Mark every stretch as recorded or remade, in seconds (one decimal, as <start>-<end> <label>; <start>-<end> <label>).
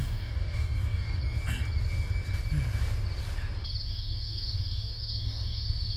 0.0-1.2 remade; 1.2-3.8 recorded; 3.8-6.0 remade